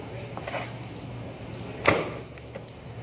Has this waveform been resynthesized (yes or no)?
no